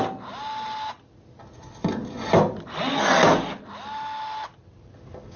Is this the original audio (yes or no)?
yes